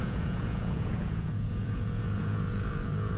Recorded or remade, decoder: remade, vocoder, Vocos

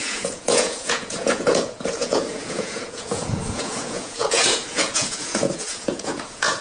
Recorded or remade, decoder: remade, vocoder, Vocos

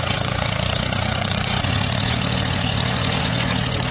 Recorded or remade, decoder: remade, vocoder, Vocos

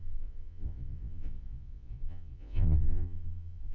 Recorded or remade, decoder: remade, vocoder, Vocos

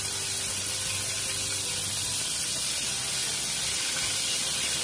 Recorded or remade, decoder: recorded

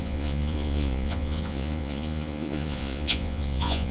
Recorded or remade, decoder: remade, vocoder, Vocos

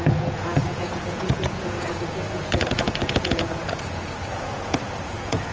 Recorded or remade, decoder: remade, vocoder, Vocos